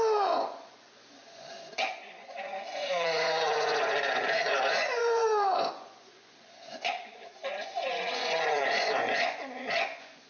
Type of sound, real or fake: fake